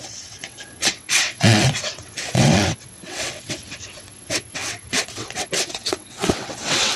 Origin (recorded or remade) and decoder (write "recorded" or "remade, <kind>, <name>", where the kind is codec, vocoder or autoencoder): remade, vocoder, WaveNeXt